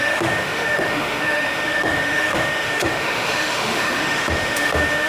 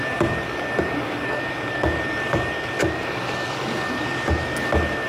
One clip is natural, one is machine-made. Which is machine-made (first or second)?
first